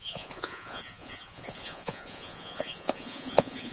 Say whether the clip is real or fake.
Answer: fake